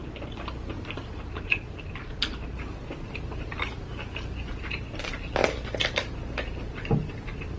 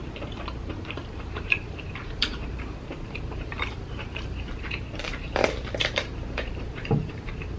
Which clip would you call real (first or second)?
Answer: first